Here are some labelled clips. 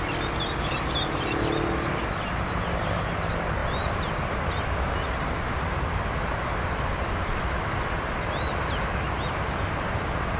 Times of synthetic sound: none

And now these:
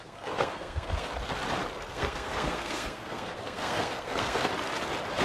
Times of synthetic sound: 0.0-1.1 (codec, SNAC); 1.9-4.5

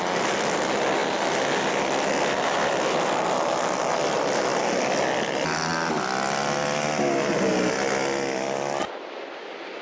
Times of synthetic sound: none

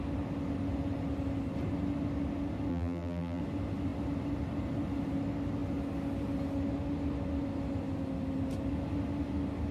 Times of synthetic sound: 2.7-3.4 (vocoder, BigVGAN v2)